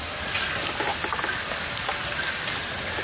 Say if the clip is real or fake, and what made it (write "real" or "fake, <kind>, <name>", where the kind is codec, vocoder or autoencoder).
real